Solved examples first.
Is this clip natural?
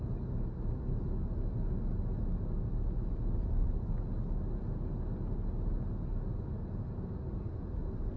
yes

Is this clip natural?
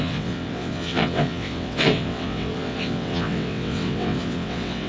no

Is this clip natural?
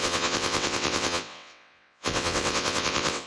no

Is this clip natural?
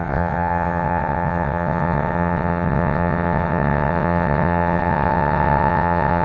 no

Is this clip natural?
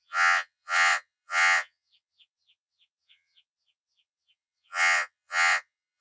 no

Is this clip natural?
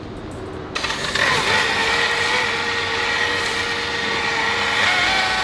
yes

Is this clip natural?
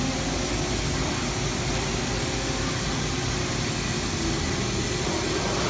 yes